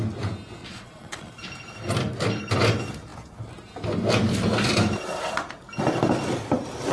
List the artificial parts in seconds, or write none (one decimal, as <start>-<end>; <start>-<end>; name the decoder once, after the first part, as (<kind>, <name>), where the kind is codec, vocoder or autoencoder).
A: 0.6-1.3 (vocoder, Vocos)